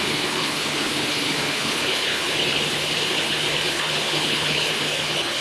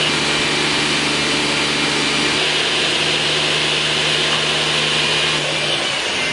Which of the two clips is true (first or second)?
second